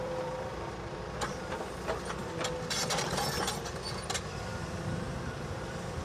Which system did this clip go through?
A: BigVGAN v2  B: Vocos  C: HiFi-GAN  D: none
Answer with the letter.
A